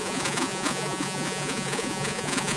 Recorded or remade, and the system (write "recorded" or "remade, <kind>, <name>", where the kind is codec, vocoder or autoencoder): remade, vocoder, Vocos